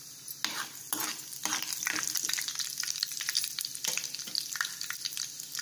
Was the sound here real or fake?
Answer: real